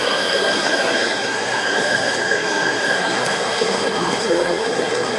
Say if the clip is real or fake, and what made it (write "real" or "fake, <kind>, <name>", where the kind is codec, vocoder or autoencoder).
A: fake, codec, SNAC